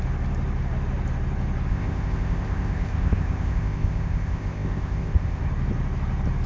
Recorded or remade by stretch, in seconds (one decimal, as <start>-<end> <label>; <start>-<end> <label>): 0.0-1.7 recorded; 1.7-5.4 remade; 5.4-6.5 recorded